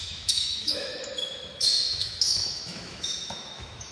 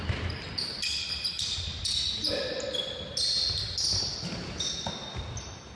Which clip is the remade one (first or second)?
first